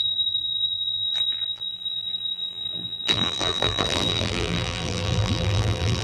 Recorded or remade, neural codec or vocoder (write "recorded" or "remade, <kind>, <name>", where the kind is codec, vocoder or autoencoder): remade, vocoder, BigVGAN v2